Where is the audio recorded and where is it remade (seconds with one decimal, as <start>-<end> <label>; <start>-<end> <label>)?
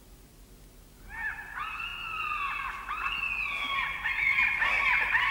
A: 0.0-5.3 recorded